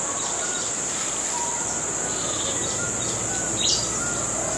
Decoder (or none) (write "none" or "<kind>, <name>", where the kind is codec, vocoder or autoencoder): none